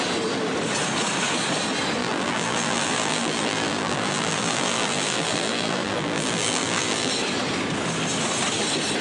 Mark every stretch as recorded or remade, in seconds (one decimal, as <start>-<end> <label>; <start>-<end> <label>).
0.0-2.0 recorded; 2.0-7.1 remade; 7.1-9.0 recorded